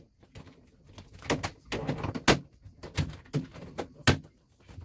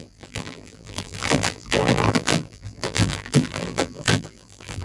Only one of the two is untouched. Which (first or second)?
first